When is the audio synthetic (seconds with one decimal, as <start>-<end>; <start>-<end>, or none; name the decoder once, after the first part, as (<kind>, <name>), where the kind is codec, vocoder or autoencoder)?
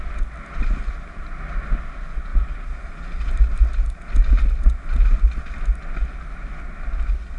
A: none